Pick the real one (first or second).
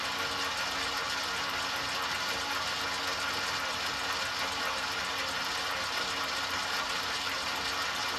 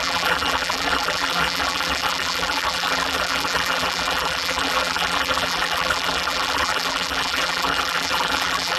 first